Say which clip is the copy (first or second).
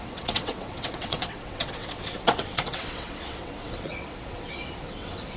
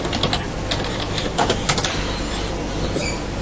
first